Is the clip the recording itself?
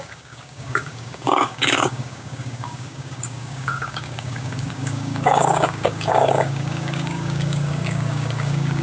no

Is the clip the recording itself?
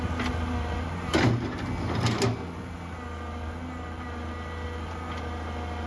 yes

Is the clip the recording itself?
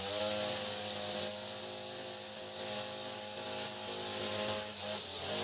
yes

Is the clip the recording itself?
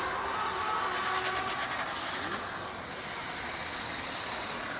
yes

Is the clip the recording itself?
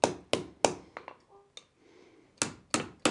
yes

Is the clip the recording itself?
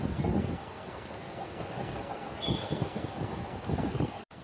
no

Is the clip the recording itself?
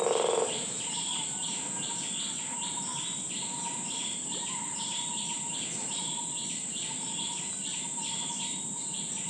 no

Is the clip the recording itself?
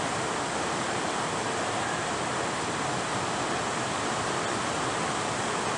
yes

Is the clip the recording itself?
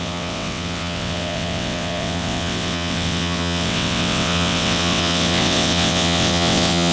no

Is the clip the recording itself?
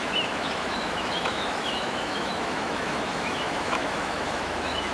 no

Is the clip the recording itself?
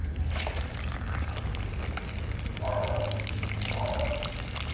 yes